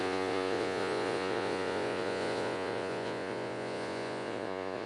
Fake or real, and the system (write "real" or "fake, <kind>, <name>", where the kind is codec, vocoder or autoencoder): fake, vocoder, Vocos